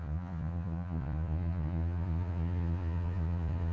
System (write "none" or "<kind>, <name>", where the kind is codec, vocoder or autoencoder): vocoder, Vocos